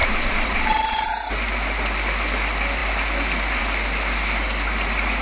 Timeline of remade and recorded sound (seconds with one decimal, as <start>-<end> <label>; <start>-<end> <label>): 0.0-1.1 remade; 1.1-5.2 recorded